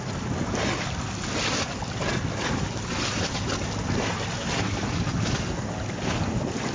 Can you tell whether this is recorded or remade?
recorded